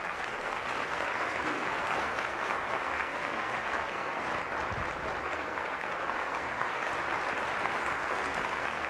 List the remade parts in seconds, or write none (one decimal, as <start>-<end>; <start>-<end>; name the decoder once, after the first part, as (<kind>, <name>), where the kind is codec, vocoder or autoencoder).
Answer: 0.0-4.3 (codec, SNAC); 5.2-6.9; 7.6-8.9